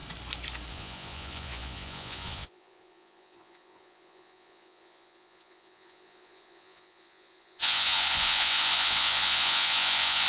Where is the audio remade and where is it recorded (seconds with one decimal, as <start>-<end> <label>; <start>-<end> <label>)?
0.0-0.7 recorded; 0.7-10.3 remade